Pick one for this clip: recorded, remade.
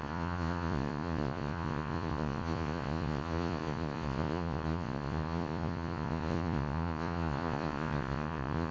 remade